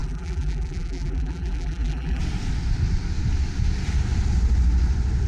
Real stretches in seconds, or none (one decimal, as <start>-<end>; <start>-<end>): 2.2-5.3